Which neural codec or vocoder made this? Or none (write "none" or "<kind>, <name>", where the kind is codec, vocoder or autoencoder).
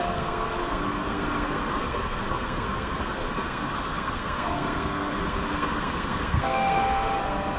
codec, SNAC